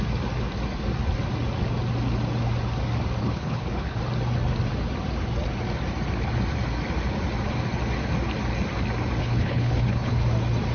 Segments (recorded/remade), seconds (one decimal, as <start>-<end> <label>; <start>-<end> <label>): 0.0-3.2 recorded; 3.2-4.0 remade; 4.0-9.2 recorded; 9.2-10.1 remade; 10.1-10.7 recorded